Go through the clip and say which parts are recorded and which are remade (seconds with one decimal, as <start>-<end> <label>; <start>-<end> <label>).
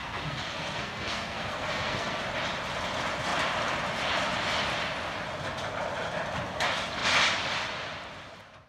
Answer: 0.0-2.2 remade; 2.2-8.7 recorded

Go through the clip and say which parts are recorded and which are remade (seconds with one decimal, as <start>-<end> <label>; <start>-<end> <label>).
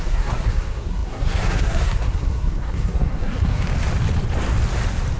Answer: 0.0-3.7 remade; 3.7-5.2 recorded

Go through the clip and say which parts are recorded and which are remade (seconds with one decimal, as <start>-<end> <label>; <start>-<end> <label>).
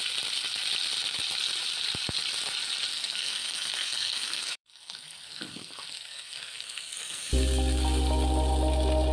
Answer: 0.0-2.9 recorded; 2.9-7.3 remade; 7.3-9.1 recorded